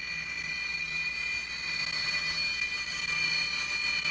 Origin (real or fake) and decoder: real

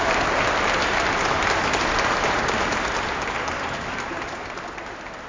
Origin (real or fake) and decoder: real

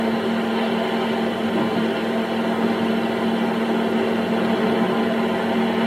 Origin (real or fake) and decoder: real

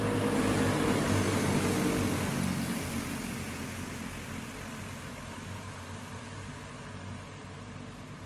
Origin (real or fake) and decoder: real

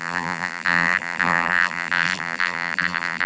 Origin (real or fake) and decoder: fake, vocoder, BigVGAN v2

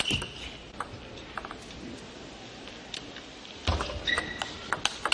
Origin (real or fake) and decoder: real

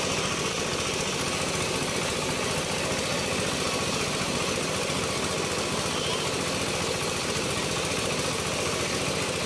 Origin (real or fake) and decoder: real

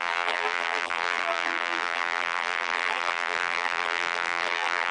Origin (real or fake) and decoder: fake, vocoder, BigVGAN v2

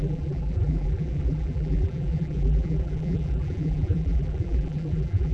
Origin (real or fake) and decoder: fake, vocoder, BigVGAN v2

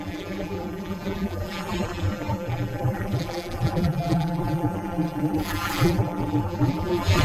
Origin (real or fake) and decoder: fake, vocoder, BigVGAN v2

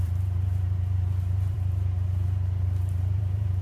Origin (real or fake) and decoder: fake, vocoder, BigVGAN v2